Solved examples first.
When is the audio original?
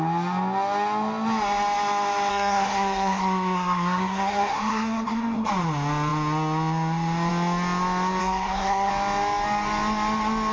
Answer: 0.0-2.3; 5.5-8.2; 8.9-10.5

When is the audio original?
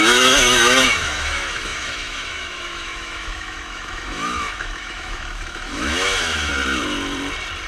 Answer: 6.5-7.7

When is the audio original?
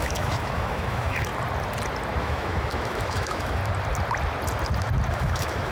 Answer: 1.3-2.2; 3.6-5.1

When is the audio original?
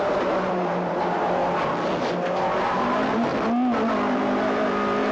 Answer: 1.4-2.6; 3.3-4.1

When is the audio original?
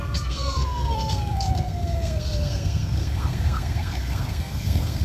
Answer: none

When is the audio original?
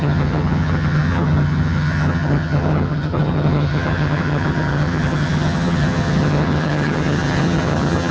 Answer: none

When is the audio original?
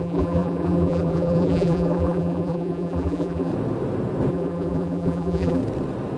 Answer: 3.5-4.3; 5.6-6.2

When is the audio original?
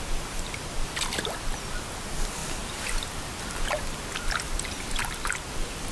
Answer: 0.0-5.0; 5.5-5.9